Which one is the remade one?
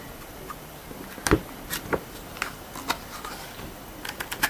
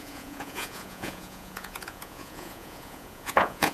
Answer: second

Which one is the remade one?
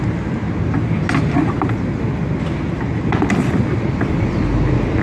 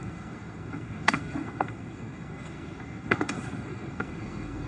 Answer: second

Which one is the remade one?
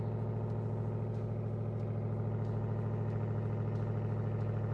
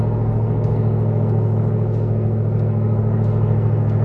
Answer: second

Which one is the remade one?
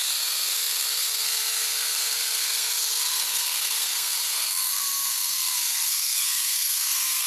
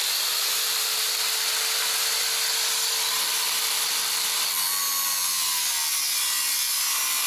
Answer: first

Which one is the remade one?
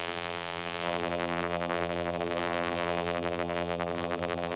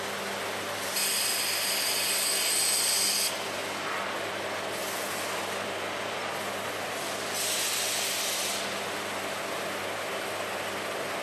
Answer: first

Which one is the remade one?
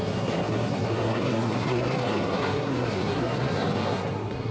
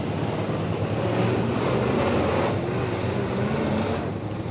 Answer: first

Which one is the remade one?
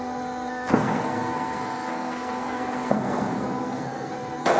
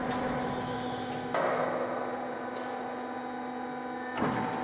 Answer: first